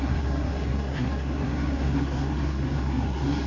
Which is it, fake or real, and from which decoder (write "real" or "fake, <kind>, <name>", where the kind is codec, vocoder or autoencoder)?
fake, codec, SNAC